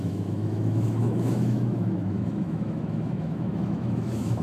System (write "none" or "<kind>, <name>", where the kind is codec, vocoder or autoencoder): autoencoder, DAC-VAE